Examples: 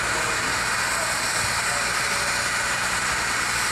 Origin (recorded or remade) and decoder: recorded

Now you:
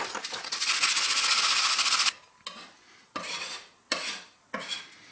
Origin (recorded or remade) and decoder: recorded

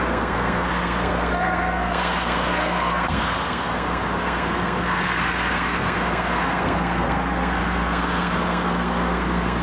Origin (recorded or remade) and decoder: remade, codec, SNAC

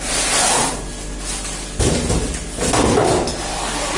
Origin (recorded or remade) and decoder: recorded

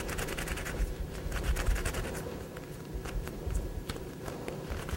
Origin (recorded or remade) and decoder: remade, vocoder, BigVGAN v2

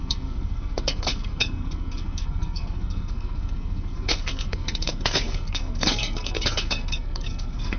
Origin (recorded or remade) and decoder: remade, codec, SNAC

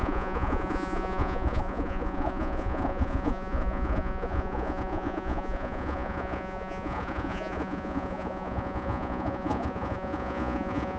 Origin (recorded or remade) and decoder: remade, vocoder, Vocos